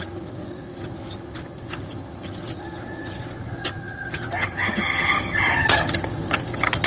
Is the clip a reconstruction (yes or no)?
yes